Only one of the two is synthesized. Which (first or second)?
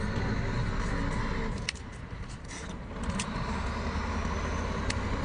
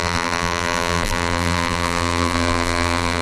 second